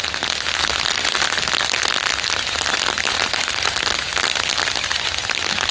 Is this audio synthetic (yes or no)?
no